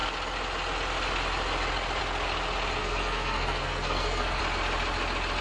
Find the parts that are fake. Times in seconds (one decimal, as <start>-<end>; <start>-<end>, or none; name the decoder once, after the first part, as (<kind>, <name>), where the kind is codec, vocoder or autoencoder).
2.8-4.4 (codec, SNAC)